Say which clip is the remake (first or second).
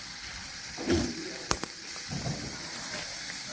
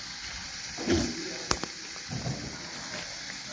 first